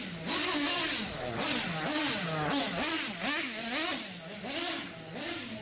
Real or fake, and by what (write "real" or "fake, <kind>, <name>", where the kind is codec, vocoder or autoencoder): real